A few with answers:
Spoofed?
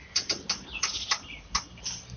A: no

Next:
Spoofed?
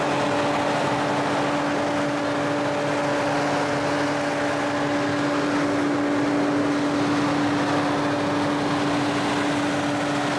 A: no